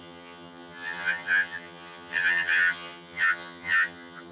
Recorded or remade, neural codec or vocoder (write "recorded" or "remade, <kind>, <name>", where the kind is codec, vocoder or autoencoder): remade, vocoder, HiFi-GAN